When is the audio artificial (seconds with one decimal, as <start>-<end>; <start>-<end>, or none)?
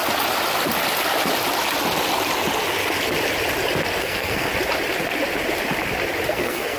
4.0-4.5; 6.3-6.8